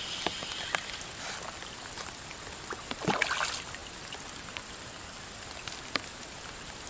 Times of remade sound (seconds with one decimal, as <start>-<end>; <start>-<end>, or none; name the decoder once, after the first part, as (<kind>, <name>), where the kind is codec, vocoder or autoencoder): none